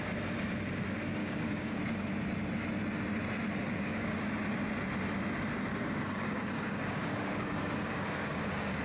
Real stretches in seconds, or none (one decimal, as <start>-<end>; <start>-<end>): 0.0-1.2; 1.8-3.6; 4.2-5.7